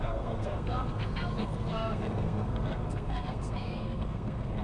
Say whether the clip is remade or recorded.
remade